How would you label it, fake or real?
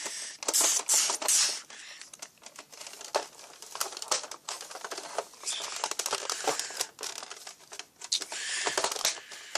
real